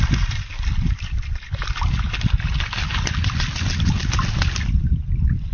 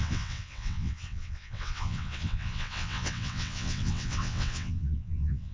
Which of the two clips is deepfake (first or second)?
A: second